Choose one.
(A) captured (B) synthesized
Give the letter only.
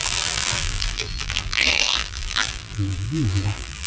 B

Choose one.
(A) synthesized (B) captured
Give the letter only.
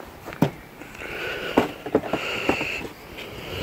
B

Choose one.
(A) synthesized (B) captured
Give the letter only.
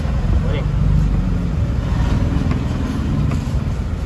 B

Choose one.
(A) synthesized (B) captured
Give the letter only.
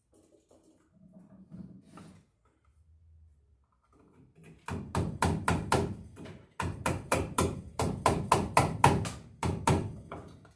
B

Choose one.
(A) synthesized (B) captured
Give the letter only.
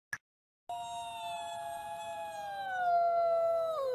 B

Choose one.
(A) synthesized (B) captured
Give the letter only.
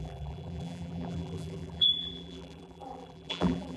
A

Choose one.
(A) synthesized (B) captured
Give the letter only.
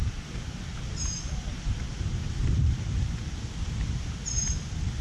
A